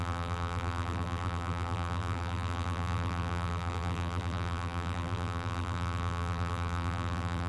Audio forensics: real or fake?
fake